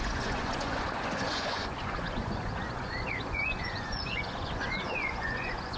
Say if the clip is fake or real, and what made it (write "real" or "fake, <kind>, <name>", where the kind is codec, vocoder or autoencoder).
fake, vocoder, Vocos